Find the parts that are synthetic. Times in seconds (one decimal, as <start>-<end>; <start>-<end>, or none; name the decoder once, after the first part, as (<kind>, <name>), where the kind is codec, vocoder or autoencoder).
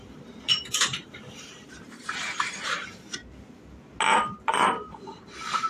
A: 0.0-3.2 (vocoder, BigVGAN v2); 4.5-5.7